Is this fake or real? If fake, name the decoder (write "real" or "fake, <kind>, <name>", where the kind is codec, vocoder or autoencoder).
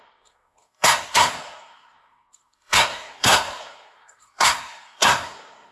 fake, codec, SNAC